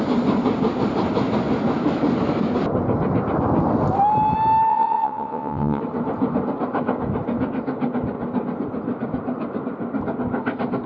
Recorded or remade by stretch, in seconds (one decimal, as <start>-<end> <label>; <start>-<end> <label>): 0.0-4.7 recorded; 4.7-5.8 remade; 5.8-10.9 recorded